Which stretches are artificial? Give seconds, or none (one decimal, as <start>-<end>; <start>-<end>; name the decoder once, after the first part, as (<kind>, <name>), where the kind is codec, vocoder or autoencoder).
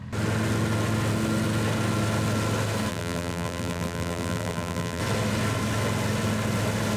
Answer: 2.9-5.0 (vocoder, BigVGAN v2)